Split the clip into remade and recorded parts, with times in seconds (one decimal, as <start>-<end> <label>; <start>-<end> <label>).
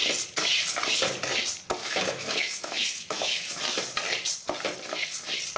0.0-1.8 recorded; 1.8-3.6 remade; 3.6-5.6 recorded